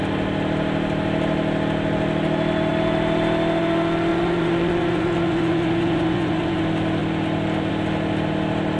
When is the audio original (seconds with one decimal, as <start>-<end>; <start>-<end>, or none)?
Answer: 0.0-4.1; 6.6-8.8